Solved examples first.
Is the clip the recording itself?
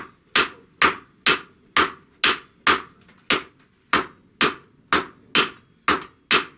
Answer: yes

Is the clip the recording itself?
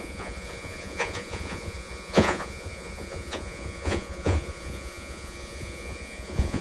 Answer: no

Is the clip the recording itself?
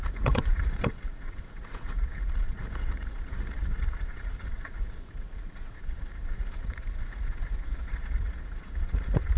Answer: no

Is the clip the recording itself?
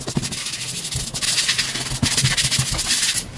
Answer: yes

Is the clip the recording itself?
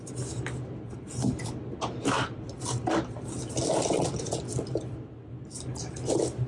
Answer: yes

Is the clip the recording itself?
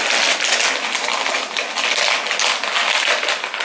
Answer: yes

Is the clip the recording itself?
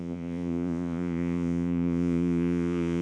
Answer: no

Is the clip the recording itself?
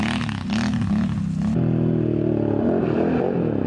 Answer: yes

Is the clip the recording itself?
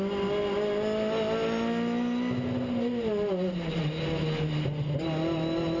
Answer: yes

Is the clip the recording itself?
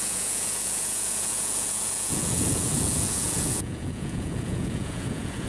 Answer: no